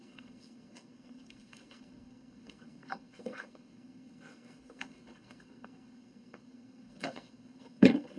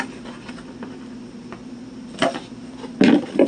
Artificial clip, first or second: first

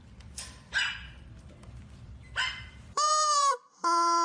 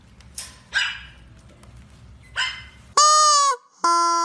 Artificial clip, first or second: first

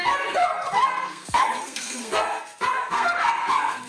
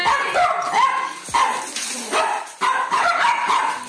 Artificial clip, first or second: first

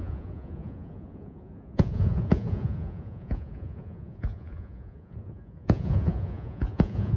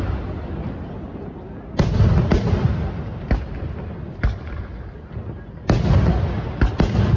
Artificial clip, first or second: first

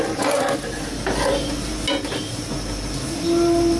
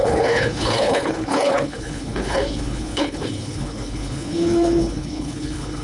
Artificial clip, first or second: second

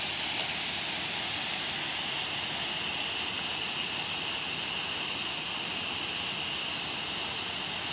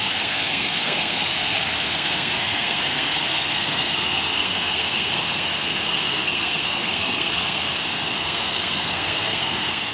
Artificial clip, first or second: second